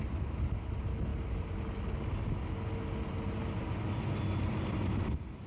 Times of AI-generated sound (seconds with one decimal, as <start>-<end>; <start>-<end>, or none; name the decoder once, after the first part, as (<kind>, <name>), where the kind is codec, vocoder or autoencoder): none